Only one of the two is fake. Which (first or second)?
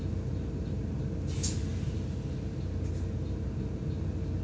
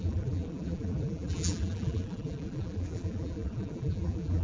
second